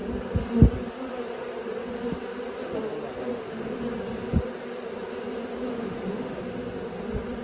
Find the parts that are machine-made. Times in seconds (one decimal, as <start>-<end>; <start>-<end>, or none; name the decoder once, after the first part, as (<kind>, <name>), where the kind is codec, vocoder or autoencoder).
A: 3.3-3.8 (autoencoder, DAC-VAE); 5.7-6.4